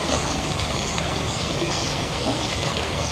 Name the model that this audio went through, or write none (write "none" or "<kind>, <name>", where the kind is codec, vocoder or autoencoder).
codec, SNAC